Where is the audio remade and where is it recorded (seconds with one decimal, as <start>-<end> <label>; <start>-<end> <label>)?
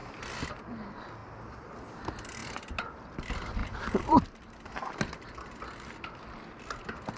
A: 0.0-2.4 recorded; 2.4-3.2 remade; 3.2-3.6 recorded; 3.6-4.2 remade; 4.2-7.2 recorded